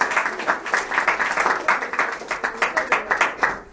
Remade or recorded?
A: recorded